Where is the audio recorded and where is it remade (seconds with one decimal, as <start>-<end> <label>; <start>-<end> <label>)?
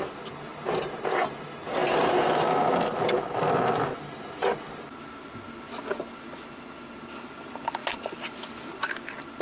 0.0-9.4 recorded